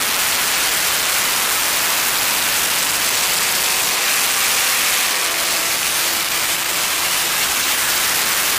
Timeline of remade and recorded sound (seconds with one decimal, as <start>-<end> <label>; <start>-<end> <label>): 0.0-5.6 recorded; 5.6-7.9 remade; 7.9-8.6 recorded